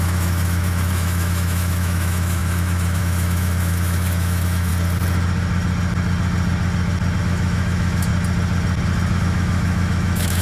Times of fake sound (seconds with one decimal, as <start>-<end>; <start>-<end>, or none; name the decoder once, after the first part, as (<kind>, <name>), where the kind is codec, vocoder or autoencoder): 0.0-4.7 (autoencoder, DAC-VAE); 7.2-8.1; 9.2-10.4